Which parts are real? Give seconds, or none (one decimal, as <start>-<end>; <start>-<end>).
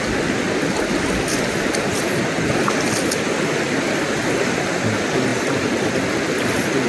0.0-6.9